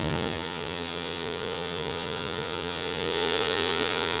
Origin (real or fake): fake